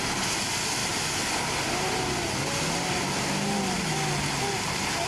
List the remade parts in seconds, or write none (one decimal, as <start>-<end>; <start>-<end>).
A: none